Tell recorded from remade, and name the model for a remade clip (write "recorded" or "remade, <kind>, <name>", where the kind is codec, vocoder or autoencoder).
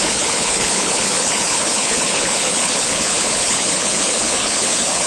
remade, codec, HILCodec